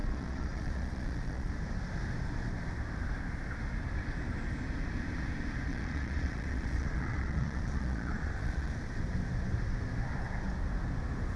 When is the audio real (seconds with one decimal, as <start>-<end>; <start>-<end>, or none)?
1.5-5.7; 8.7-11.4